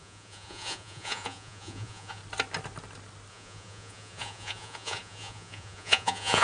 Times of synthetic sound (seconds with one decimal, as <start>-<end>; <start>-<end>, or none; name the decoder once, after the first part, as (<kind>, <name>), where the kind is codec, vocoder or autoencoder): 0.0-2.2 (vocoder, Vocos); 3.3-6.4